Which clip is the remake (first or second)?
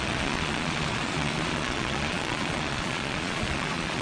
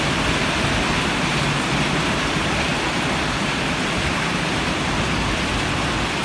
first